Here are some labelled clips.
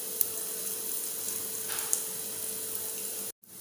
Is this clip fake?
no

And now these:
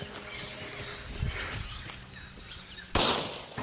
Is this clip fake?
no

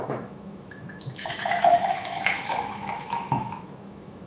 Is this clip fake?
yes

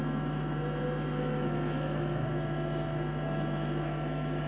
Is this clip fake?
yes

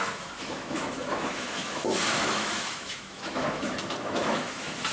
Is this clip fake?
yes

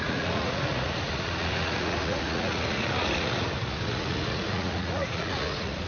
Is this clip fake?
yes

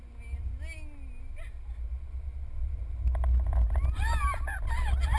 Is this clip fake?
no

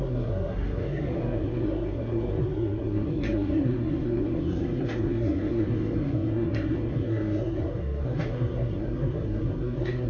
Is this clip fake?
yes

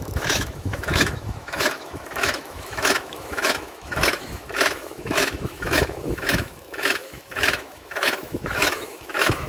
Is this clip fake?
yes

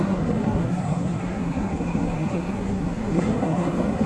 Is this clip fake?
yes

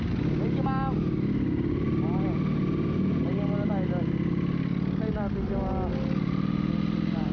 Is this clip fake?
no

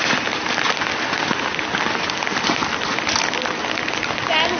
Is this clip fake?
no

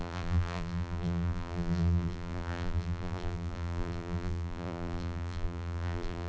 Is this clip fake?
yes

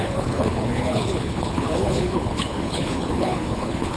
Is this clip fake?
yes